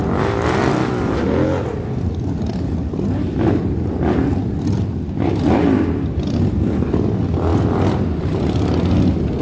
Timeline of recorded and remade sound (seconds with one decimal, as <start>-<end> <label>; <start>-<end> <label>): 0.0-9.4 recorded

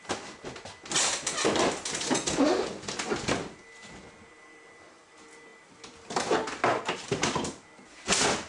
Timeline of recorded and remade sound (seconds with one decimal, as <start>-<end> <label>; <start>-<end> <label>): 0.0-8.5 recorded

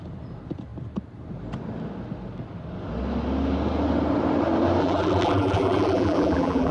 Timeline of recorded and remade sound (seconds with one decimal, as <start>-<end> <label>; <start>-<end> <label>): 0.0-4.8 recorded; 4.8-6.7 remade

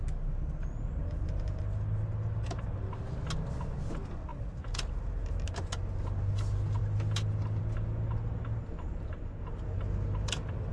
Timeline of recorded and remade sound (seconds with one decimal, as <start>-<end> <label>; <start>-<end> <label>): 0.0-10.7 recorded

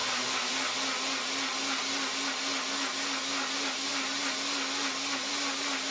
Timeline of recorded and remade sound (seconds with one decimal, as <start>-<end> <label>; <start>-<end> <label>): 0.0-5.9 recorded

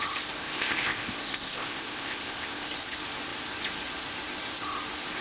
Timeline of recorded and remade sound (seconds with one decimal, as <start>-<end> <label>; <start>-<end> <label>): 0.0-0.4 recorded; 0.4-2.7 remade; 2.7-5.2 recorded

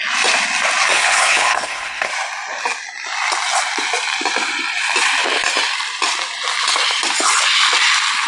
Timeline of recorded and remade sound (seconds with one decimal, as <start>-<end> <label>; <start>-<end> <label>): 0.0-0.9 recorded; 0.9-2.1 remade; 2.1-8.3 recorded